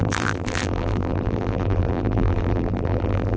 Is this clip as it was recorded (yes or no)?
no